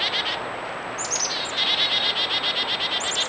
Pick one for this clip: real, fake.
real